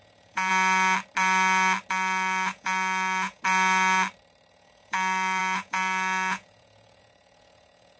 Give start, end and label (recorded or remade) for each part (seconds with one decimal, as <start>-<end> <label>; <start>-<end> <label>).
0.0-0.5 remade; 0.5-1.9 recorded; 1.9-3.4 remade; 3.4-4.5 recorded; 4.5-8.0 remade